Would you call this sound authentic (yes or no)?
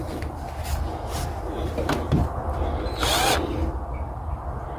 yes